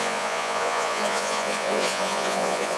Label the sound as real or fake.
fake